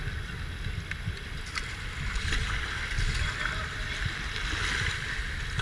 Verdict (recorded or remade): recorded